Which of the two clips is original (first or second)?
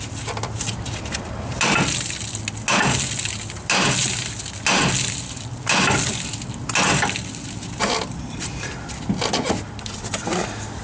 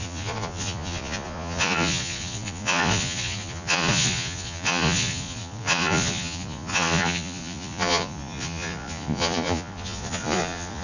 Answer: first